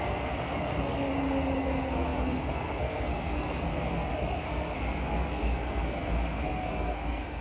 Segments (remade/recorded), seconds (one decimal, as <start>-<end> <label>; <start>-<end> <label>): 0.0-1.1 remade; 1.1-1.6 recorded; 1.6-7.4 remade